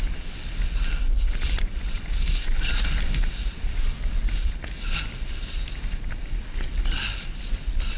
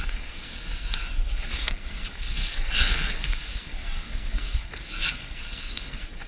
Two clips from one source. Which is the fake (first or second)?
second